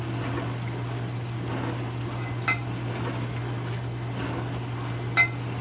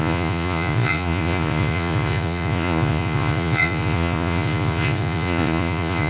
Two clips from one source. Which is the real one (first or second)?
first